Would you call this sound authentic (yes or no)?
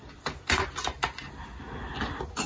yes